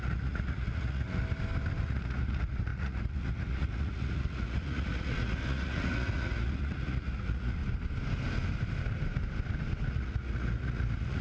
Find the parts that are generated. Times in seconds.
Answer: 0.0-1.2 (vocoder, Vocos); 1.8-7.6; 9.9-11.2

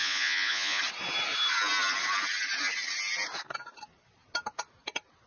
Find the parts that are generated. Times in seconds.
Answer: 0.0-0.8 (vocoder, Vocos)

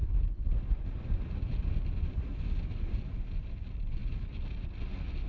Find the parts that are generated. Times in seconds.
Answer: none